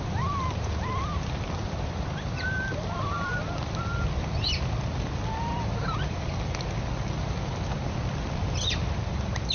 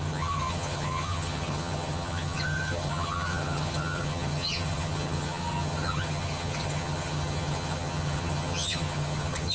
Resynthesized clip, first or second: second